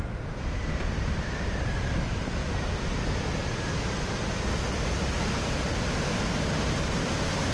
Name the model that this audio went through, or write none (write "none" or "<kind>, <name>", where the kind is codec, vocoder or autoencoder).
none